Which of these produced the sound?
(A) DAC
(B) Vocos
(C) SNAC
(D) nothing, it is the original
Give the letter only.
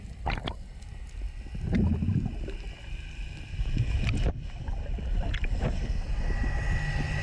D